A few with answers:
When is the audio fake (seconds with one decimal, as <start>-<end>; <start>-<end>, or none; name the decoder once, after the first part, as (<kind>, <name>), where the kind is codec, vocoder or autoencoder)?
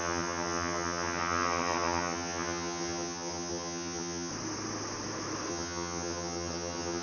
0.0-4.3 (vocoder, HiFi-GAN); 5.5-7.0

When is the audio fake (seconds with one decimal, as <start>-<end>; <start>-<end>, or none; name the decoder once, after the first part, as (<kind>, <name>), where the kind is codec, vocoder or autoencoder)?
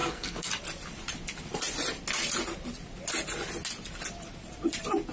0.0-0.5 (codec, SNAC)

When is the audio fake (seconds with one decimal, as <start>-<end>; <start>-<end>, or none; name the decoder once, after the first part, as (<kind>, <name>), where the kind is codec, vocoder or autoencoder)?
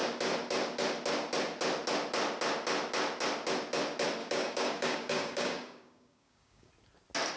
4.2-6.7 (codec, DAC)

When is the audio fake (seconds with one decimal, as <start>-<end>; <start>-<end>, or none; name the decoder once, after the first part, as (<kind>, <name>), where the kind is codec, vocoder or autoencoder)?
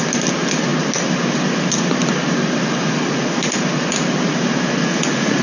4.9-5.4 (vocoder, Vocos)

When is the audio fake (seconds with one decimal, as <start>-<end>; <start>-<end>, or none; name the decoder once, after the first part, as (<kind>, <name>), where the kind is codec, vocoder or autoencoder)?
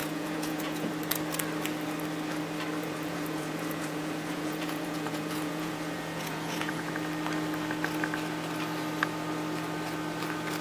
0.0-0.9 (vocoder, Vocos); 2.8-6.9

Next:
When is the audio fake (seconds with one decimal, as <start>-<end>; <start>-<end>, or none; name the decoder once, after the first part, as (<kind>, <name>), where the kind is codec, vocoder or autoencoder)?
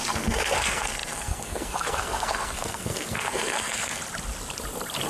0.0-4.0 (codec, SNAC)